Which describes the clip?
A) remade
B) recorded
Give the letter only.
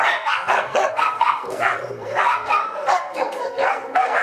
A